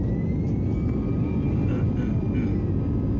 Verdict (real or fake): real